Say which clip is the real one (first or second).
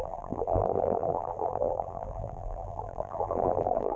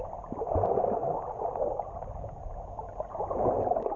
second